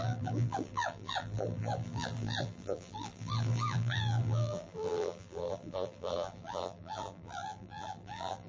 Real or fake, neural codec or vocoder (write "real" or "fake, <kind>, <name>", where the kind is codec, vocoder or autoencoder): fake, vocoder, BigVGAN v2